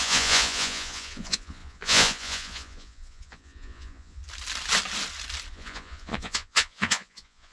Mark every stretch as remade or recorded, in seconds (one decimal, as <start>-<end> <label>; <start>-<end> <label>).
0.0-4.2 remade; 4.2-5.5 recorded; 5.5-7.5 remade